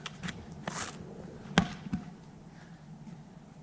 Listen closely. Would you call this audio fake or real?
real